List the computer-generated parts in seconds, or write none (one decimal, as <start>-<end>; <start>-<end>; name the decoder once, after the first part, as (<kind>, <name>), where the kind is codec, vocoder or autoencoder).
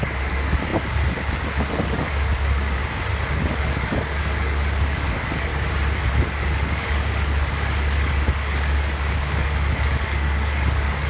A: 0.0-2.8 (codec, DAC); 3.5-5.5; 6.1-11.1